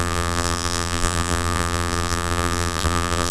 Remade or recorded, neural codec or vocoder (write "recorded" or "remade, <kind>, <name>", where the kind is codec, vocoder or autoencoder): remade, vocoder, BigVGAN v2